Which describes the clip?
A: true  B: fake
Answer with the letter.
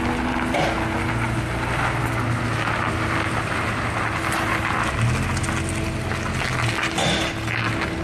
A